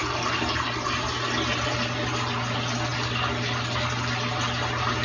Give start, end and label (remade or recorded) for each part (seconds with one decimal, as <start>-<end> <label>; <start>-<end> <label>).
0.0-5.0 recorded